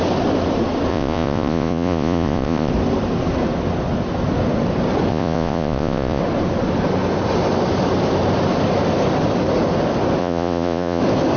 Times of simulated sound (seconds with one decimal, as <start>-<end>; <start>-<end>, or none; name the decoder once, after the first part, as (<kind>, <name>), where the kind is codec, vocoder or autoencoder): 0.9-2.7 (vocoder, Vocos); 5.1-6.2; 10.2-11.0